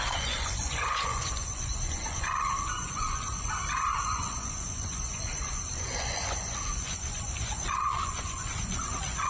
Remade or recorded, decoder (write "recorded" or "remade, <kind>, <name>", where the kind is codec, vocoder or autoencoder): remade, vocoder, Vocos